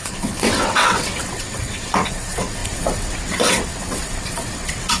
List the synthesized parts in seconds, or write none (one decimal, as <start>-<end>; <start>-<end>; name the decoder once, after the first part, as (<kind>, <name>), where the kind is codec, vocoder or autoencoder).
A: 0.0-5.0 (vocoder, WaveNeXt)